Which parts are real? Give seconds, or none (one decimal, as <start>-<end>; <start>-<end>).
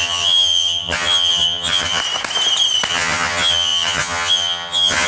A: 2.0-2.9